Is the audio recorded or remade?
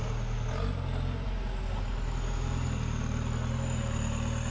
recorded